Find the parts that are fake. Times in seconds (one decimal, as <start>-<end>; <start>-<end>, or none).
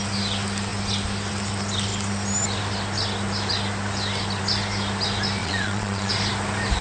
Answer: 5.4-6.1